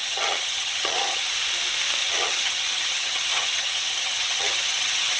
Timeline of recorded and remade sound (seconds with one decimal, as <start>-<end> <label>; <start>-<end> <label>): 0.0-1.3 remade; 1.3-2.0 recorded; 2.0-5.2 remade